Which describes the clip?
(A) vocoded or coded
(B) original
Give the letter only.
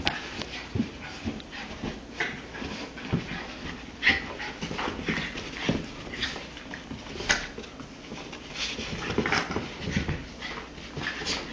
B